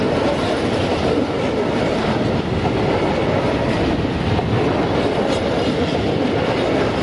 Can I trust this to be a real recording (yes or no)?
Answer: yes